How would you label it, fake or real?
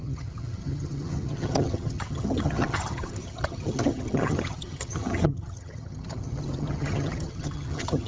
fake